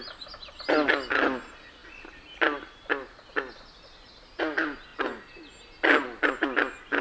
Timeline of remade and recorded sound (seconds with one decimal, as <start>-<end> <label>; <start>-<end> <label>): 0.0-7.0 recorded